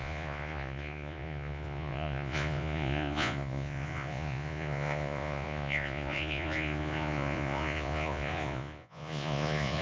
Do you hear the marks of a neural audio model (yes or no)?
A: yes